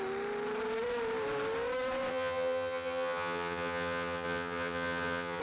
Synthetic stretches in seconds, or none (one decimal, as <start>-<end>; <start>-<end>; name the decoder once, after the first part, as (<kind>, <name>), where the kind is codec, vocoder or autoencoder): 2.1-5.4 (vocoder, HiFi-GAN)